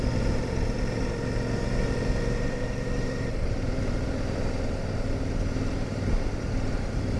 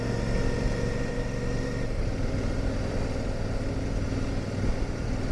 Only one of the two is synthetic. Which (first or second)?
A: first